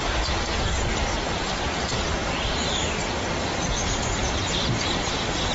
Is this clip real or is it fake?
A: real